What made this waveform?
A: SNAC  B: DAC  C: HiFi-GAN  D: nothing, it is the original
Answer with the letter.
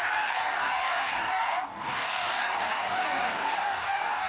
B